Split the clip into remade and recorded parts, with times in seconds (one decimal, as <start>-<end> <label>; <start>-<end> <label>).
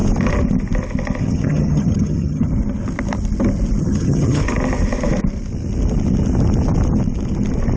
0.0-1.2 recorded; 1.2-2.5 remade; 2.5-3.8 recorded; 3.8-4.4 remade; 4.4-7.8 recorded